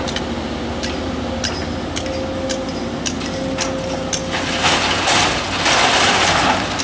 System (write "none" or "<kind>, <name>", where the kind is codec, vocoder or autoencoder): none